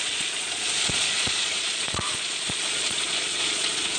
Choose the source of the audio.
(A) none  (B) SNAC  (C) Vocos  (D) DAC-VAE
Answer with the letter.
C